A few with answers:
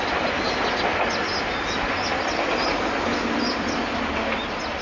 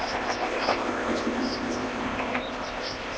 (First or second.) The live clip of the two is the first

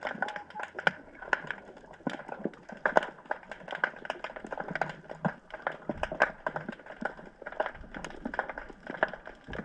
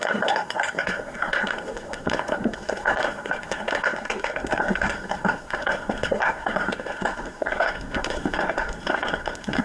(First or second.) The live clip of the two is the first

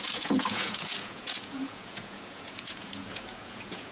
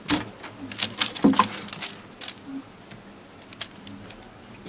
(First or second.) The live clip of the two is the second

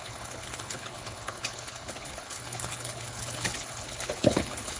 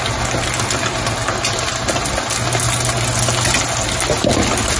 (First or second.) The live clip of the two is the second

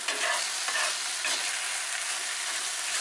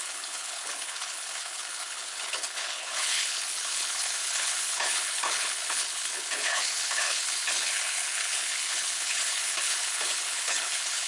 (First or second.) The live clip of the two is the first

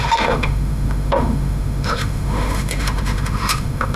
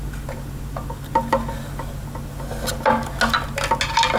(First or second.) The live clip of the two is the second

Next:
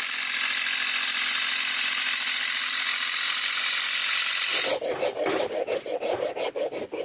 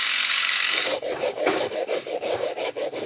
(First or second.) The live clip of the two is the first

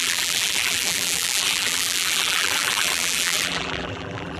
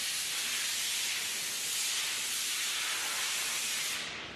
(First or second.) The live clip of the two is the second